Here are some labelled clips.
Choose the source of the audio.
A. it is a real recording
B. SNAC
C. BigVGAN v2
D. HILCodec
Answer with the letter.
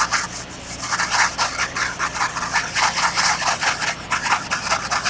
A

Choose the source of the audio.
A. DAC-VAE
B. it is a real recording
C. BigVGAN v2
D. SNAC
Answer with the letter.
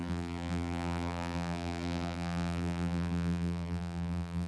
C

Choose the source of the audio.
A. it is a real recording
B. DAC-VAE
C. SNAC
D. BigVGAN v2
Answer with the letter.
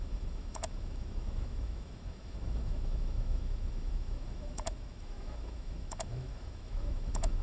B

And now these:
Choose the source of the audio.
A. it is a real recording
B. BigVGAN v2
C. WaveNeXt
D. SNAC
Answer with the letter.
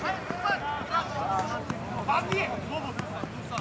A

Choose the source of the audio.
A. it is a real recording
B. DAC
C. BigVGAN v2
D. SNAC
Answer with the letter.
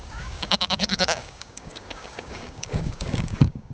B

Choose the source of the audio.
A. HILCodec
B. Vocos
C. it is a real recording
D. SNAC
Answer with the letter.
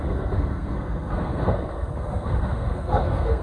D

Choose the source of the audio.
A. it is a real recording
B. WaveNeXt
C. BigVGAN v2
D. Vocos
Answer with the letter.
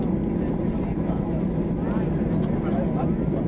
A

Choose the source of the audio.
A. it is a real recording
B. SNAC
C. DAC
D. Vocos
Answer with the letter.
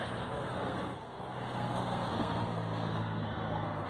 B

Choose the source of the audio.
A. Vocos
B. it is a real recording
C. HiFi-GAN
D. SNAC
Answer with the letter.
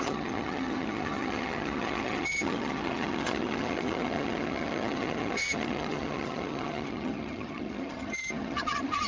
C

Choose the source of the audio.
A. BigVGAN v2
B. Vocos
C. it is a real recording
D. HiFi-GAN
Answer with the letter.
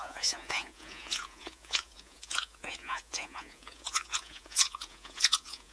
B